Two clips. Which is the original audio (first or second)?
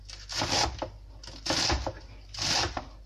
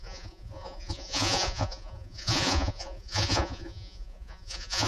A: first